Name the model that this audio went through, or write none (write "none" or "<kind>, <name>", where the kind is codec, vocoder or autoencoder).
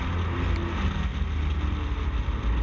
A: none